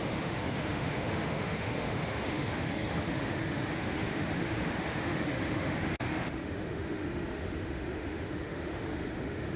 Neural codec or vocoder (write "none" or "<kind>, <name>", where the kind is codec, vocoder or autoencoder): autoencoder, DAC-VAE